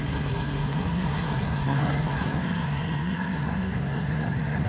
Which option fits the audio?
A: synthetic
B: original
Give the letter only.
A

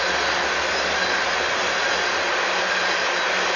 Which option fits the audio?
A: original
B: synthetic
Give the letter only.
A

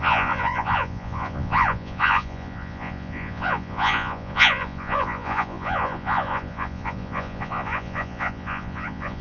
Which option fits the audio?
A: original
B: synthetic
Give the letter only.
B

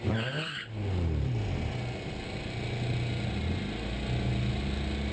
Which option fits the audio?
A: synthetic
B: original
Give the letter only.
B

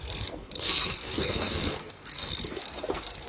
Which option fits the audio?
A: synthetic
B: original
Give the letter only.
A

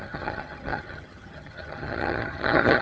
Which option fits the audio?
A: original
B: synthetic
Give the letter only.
B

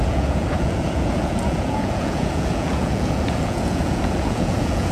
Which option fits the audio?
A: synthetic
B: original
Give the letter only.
A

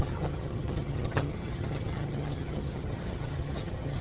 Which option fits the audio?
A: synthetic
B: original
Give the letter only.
A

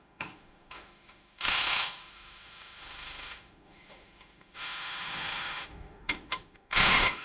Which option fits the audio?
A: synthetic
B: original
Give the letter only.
A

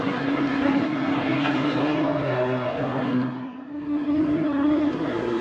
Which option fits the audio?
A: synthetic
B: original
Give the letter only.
A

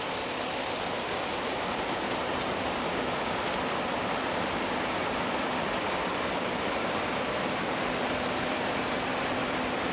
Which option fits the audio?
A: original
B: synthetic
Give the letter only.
B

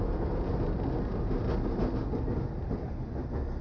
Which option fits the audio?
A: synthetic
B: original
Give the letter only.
B